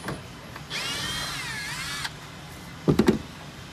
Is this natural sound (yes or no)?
yes